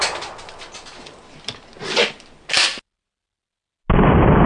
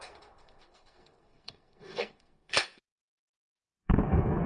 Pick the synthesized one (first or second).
second